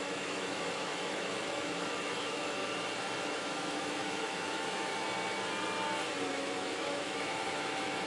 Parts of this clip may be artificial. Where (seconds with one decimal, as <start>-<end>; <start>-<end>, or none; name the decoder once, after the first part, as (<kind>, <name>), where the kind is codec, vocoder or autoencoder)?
0.0-2.6 (autoencoder, DAC-VAE); 3.2-4.9; 6.3-8.1